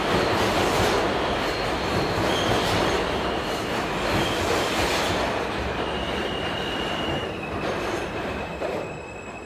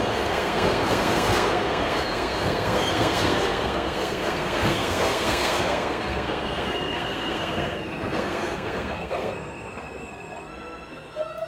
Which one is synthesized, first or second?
second